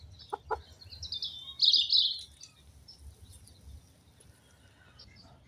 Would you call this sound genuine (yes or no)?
yes